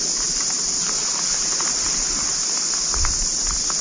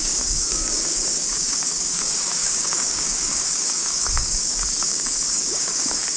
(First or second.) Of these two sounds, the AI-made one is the second